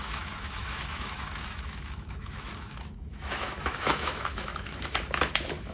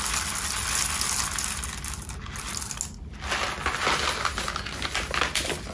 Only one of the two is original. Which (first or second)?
second